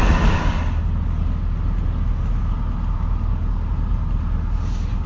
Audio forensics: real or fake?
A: real